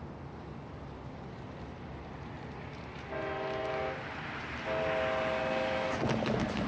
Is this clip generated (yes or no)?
no